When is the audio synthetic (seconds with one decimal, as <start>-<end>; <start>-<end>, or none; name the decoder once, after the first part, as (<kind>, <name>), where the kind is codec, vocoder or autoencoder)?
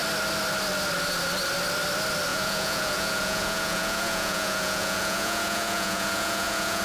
2.3-6.8 (vocoder, Vocos)